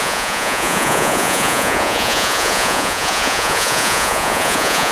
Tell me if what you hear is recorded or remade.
remade